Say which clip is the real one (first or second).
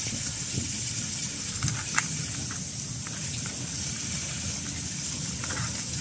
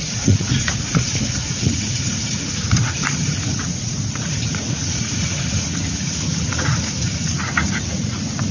first